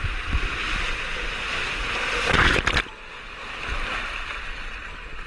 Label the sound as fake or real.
real